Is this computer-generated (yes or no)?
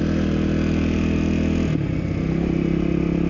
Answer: no